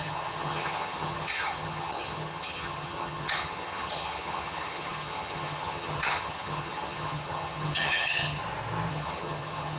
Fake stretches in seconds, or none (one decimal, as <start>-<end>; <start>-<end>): 0.0-8.4; 8.9-9.8